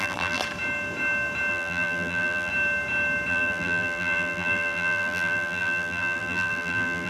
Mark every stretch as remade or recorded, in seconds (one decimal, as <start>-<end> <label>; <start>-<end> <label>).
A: 0.0-0.4 remade; 0.4-1.5 recorded; 1.5-2.5 remade; 2.5-3.3 recorded; 3.3-7.1 remade